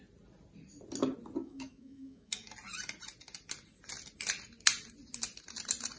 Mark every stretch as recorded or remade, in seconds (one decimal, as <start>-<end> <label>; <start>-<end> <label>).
0.0-1.4 recorded; 1.4-2.5 remade; 2.5-6.0 recorded